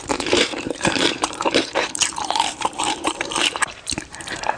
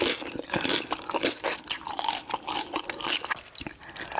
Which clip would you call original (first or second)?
second